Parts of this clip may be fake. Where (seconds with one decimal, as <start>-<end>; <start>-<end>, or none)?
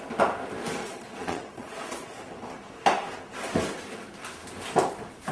0.8-2.2